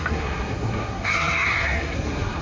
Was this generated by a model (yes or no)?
yes